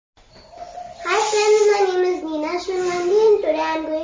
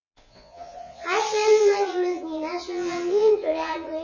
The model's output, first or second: second